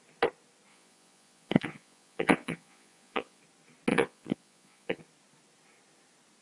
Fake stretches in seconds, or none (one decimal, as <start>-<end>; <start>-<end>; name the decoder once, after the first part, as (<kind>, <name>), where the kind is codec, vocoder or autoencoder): 0.7-3.4 (vocoder, Vocos); 3.9-5.0